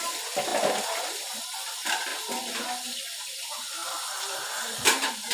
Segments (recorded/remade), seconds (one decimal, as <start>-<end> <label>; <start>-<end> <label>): 0.0-5.3 recorded